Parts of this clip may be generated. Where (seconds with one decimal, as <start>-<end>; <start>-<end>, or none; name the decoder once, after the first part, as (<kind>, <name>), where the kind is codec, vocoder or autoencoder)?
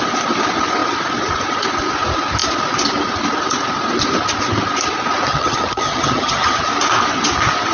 5.3-6.6 (vocoder, HiFi-GAN)